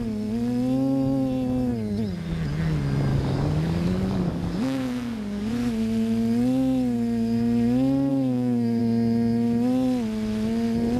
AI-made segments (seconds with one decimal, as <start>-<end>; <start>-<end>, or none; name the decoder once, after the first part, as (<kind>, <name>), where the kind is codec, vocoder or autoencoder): 3.1-5.5 (codec, DAC); 8.1-8.8